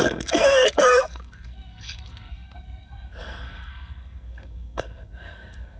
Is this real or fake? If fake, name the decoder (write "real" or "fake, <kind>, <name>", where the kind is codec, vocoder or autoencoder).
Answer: fake, codec, SNAC